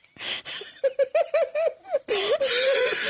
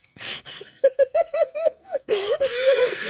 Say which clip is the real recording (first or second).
first